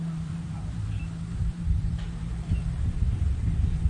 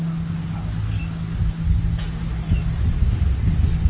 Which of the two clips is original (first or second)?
second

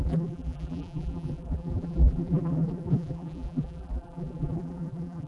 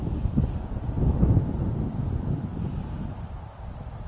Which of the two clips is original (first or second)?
second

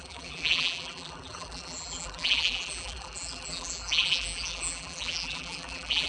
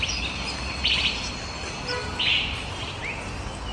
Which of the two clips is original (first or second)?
second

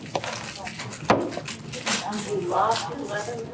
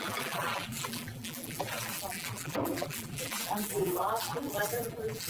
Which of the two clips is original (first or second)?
first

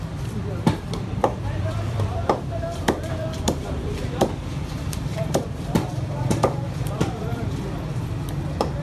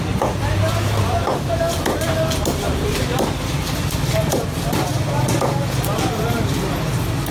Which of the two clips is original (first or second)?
second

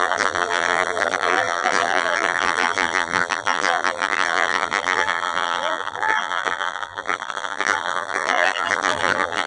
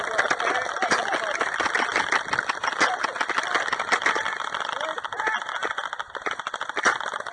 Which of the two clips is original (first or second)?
second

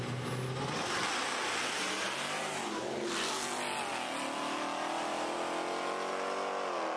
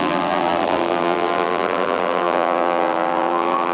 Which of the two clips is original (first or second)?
first